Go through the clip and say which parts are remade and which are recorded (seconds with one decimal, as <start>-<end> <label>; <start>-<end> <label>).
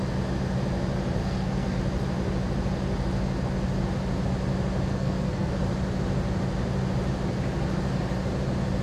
0.0-1.2 recorded; 1.2-1.8 remade; 1.8-4.9 recorded; 4.9-5.5 remade; 5.5-8.8 recorded